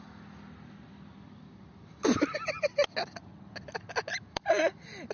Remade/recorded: recorded